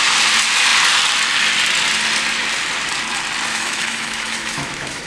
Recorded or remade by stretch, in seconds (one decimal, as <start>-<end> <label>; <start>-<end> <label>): 0.0-3.5 recorded; 3.5-5.1 remade